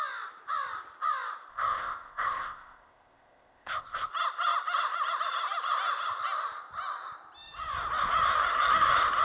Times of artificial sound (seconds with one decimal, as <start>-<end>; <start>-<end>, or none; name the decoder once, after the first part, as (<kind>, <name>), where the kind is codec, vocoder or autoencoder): 1.5-4.1 (codec, ZipCodec)